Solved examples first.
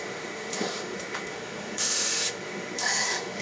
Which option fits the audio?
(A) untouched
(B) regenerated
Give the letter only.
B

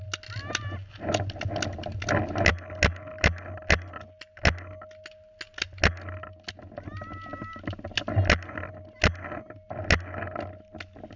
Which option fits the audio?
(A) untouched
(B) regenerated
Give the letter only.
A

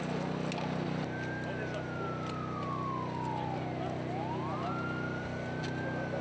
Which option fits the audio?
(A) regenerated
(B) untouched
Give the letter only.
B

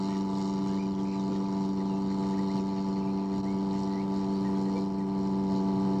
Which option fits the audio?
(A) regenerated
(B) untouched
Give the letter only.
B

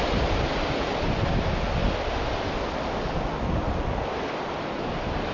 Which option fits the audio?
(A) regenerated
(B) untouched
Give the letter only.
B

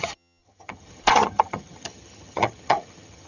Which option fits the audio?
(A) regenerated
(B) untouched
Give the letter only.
A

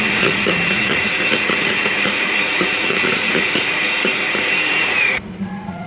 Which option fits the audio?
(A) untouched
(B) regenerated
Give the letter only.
B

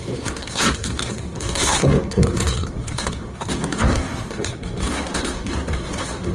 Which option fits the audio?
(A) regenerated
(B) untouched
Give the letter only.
A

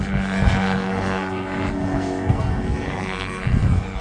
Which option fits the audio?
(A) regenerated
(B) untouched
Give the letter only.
A